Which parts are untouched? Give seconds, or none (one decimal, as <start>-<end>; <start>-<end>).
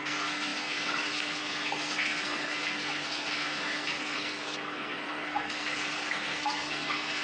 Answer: none